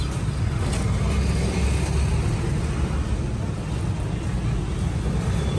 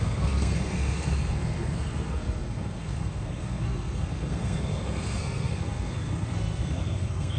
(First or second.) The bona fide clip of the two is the first